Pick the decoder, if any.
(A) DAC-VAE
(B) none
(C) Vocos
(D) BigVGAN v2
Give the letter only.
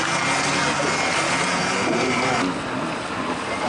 B